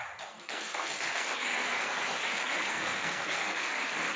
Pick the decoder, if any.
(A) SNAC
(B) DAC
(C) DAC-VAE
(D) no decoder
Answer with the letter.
A